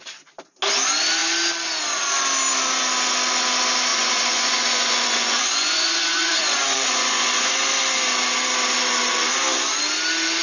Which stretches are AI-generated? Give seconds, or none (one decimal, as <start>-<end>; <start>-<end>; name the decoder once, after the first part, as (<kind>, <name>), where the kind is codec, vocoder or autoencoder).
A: 3.9-7.8 (vocoder, Vocos)